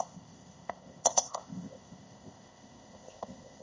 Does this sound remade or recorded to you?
remade